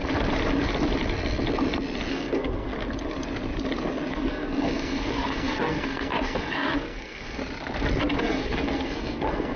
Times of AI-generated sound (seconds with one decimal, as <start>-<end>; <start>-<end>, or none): 2.1-2.7; 4.1-7.4; 8.2-9.6